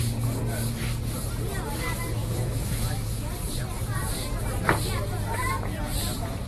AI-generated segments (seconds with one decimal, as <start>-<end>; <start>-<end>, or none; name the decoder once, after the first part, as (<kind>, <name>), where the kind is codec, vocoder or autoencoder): 2.2-3.3 (autoencoder, DAC-VAE)

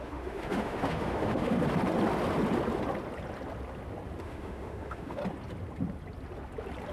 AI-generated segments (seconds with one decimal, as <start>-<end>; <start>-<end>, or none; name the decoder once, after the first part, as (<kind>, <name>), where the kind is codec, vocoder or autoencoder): 0.0-1.6 (autoencoder, DAC-VAE); 4.2-5.2

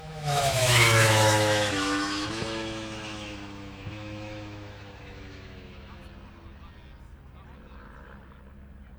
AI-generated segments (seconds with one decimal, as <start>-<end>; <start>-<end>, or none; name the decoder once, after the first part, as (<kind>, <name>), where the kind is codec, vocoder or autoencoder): 0.0-6.0 (autoencoder, DAC-VAE)

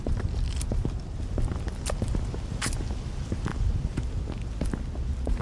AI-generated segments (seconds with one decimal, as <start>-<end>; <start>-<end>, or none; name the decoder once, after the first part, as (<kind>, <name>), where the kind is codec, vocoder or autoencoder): none